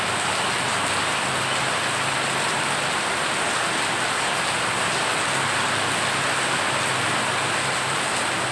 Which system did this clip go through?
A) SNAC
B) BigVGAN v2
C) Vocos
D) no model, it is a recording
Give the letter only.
D